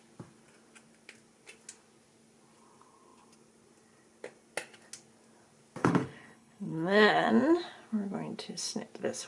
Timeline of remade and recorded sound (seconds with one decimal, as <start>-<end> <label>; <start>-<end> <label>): 0.0-5.8 recorded; 5.8-7.3 remade; 7.3-9.3 recorded